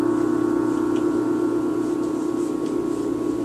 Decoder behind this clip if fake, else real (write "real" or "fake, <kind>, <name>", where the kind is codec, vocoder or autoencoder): real